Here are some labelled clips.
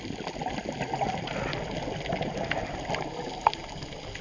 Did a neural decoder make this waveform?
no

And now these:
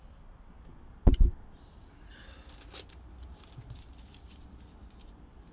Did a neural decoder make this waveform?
no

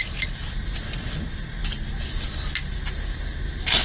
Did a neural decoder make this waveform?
no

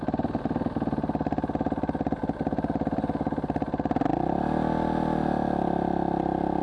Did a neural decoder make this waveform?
no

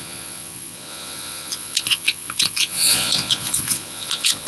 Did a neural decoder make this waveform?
yes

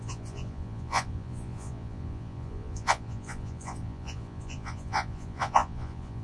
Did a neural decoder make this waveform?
yes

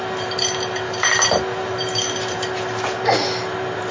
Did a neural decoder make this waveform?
no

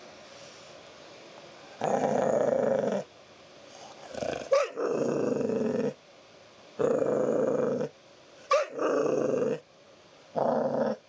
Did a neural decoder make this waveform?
no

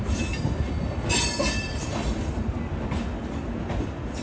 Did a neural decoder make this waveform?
no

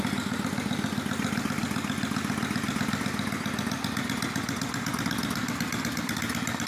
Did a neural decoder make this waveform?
no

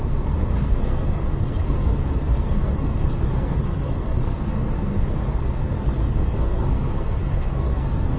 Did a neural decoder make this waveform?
yes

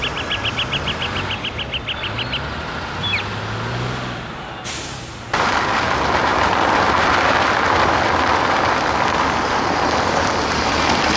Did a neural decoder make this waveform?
no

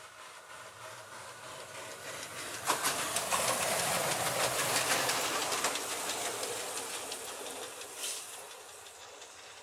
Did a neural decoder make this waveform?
yes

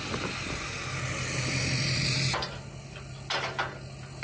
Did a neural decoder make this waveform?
no